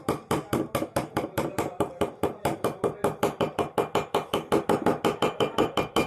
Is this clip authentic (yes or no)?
yes